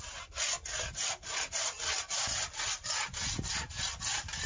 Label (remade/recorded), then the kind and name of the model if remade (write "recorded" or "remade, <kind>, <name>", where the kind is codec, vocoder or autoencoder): recorded